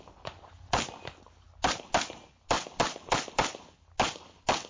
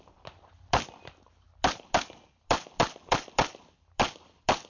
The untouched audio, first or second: first